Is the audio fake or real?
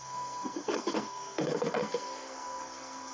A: fake